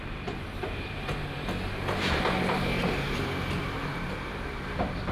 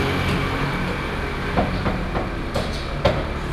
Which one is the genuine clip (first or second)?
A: second